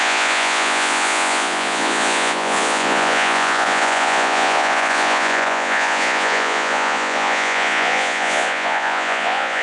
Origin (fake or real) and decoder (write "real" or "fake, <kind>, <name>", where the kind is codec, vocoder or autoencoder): fake, vocoder, Vocos